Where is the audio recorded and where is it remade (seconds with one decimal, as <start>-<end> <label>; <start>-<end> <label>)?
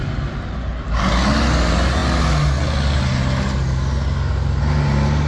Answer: 0.0-5.3 recorded